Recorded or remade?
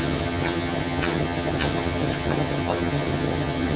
remade